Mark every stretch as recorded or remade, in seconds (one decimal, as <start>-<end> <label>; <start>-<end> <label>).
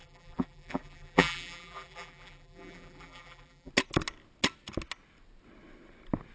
0.0-3.7 remade; 3.7-6.3 recorded